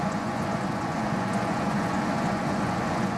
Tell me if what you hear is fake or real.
fake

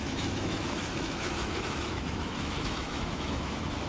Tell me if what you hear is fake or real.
fake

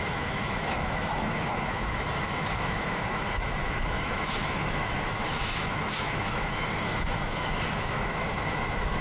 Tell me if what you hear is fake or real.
fake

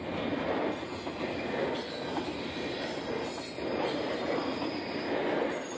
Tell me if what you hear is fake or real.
real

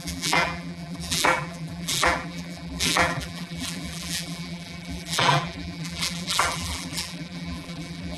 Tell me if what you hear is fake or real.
fake